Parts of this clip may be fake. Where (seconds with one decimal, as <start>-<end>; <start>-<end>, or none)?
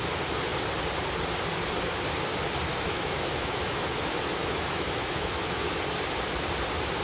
2.7-5.7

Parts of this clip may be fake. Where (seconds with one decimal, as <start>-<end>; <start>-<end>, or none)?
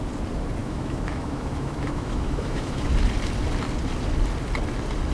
0.6-2.9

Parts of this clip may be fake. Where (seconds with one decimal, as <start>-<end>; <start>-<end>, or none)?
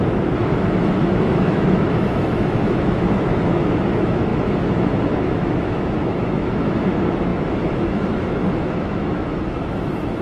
0.0-10.2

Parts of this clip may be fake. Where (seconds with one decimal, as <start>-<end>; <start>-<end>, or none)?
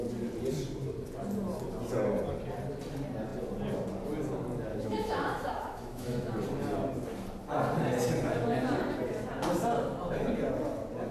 4.7-6.3